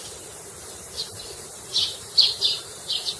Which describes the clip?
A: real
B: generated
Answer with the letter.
B